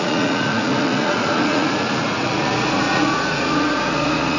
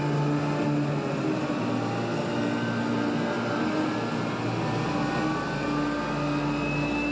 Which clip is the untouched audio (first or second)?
second